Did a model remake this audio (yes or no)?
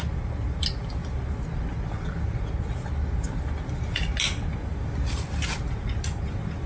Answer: no